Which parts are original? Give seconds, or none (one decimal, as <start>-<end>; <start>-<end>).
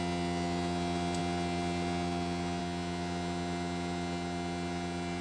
0.0-5.2